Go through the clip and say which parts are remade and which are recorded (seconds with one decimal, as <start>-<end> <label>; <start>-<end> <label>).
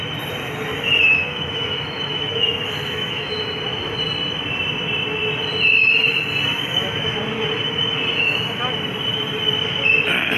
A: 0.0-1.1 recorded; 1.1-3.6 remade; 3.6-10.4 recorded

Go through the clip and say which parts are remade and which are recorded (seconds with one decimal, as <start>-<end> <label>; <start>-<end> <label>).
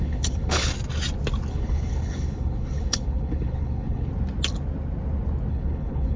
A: 0.0-0.7 remade; 0.7-1.5 recorded; 1.5-4.1 remade; 4.1-5.5 recorded; 5.5-6.2 remade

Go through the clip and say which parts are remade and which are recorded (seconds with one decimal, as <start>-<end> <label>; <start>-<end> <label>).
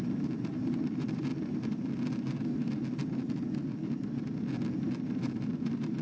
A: 0.0-1.3 remade; 1.3-4.9 recorded; 4.9-6.0 remade